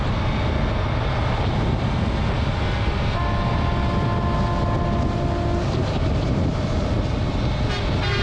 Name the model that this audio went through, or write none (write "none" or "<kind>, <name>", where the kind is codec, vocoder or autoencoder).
none